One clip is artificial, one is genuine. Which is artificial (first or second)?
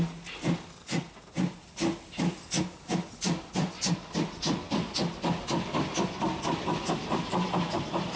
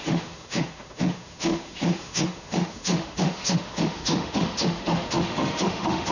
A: second